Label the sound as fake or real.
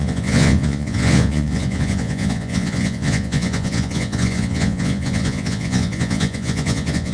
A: fake